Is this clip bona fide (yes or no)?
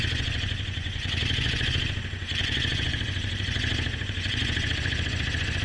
no